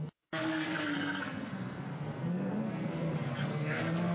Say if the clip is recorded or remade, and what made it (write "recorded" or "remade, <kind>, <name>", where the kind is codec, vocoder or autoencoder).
remade, codec, SNAC